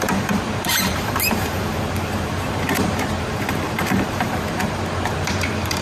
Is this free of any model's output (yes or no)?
no